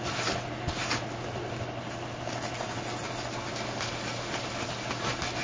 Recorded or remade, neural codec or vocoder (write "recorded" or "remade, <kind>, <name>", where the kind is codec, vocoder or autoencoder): recorded